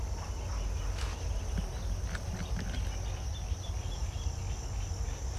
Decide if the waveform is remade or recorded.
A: recorded